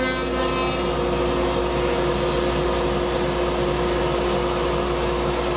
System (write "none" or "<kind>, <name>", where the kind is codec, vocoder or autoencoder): none